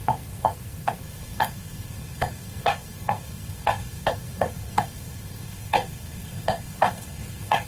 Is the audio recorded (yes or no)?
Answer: no